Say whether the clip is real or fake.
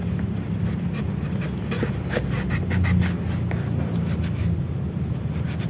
real